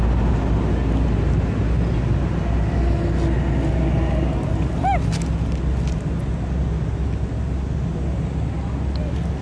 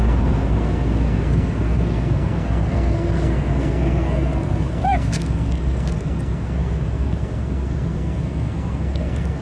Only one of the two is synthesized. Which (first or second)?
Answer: second